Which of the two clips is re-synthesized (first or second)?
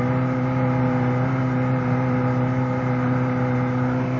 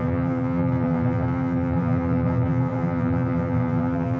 second